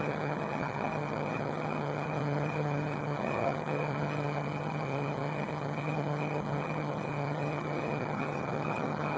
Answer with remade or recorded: remade